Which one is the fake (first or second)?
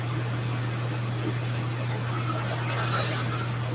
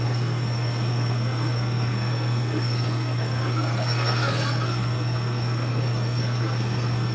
second